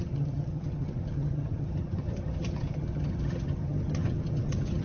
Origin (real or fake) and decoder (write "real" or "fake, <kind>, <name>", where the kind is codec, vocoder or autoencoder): fake, vocoder, HiFi-GAN